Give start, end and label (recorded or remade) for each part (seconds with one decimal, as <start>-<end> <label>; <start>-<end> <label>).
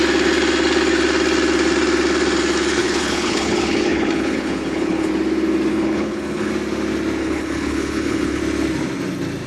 0.0-2.8 recorded; 2.8-5.1 remade; 5.1-5.7 recorded; 5.7-6.5 remade; 6.5-7.2 recorded; 7.2-8.4 remade; 8.4-9.5 recorded